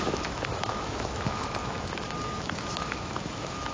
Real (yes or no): no